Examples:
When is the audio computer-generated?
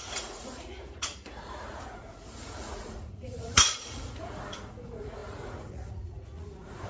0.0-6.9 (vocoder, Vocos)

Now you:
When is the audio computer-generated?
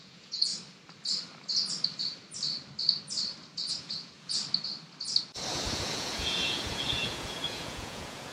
0.0-0.5 (vocoder, Vocos); 3.7-4.4; 5.5-8.3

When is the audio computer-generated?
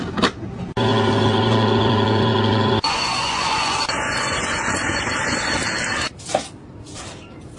0.9-5.5 (vocoder, Vocos)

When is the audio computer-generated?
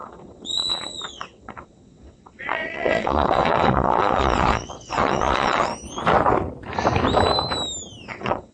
0.0-5.7 (vocoder, WaveNeXt); 8.1-8.5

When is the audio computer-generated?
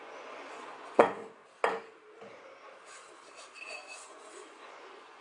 0.0-1.4 (vocoder, Vocos); 3.7-5.2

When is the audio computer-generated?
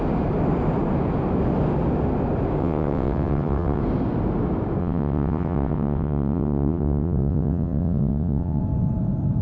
2.6-3.8 (vocoder, WaveNeXt); 4.8-8.6